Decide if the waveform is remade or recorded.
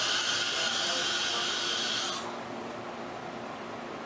recorded